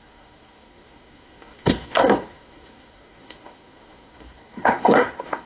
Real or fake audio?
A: fake